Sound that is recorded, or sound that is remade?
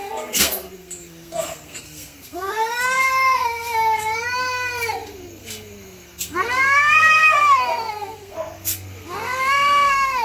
remade